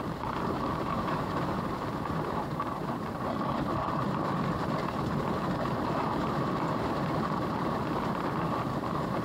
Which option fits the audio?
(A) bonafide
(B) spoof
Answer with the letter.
B